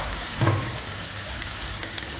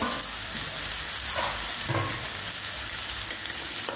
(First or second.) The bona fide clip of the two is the second